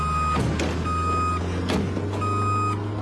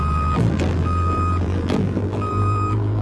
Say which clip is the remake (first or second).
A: second